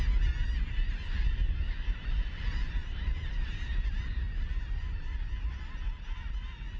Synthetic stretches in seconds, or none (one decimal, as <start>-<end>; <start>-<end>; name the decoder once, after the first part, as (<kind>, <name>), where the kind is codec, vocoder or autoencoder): 2.8-6.8 (vocoder, BigVGAN v2)